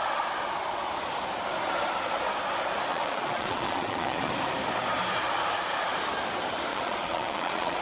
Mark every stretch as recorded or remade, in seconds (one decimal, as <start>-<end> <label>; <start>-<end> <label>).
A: 0.0-2.9 recorded; 2.9-4.3 remade; 4.3-6.7 recorded; 6.7-7.8 remade